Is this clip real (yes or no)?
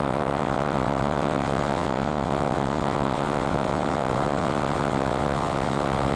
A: no